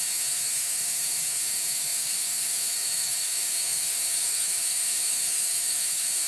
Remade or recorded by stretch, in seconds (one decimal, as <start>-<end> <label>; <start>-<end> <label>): 0.0-6.3 remade